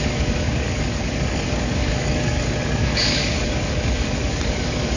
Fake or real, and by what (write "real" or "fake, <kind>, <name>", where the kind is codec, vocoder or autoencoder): fake, codec, DAC